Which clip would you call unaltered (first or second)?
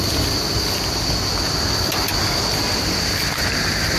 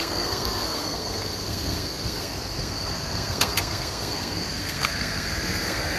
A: first